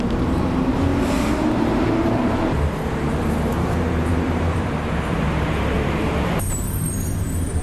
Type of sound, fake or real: fake